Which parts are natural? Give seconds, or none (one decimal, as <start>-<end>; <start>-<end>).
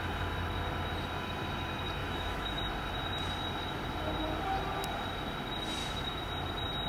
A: 0.0-2.0; 2.6-5.8; 6.3-6.9